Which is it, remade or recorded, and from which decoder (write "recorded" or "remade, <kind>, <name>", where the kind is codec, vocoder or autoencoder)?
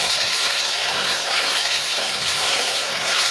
remade, codec, SNAC